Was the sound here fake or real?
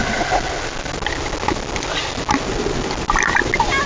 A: real